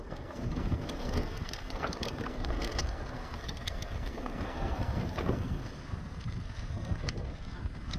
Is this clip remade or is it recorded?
remade